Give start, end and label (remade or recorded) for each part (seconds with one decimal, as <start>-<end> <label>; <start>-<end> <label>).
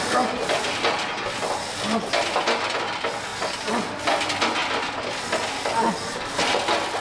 0.0-7.0 recorded